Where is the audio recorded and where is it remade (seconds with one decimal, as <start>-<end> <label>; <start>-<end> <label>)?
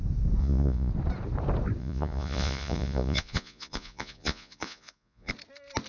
0.0-0.4 recorded; 0.4-0.9 remade; 0.9-1.8 recorded; 1.8-5.3 remade; 5.3-5.9 recorded